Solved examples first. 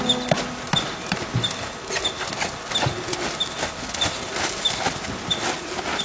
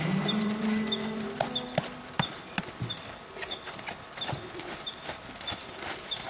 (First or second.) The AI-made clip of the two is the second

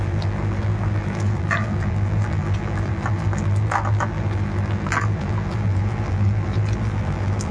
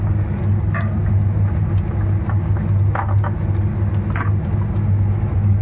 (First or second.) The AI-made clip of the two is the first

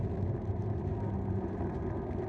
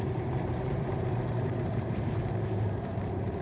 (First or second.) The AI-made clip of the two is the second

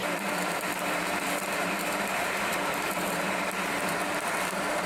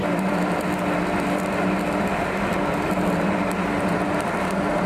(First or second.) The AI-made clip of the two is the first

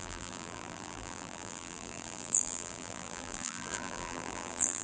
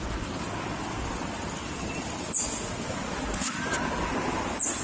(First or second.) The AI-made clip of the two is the first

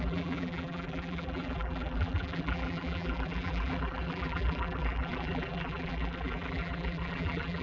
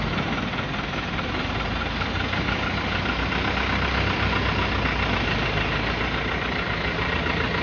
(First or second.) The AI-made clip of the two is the first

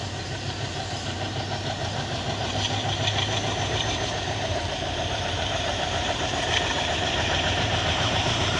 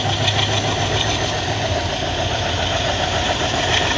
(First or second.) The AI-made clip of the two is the first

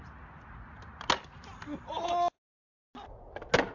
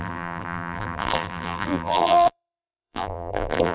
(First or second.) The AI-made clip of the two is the second